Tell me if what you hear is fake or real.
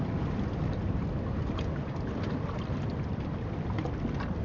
real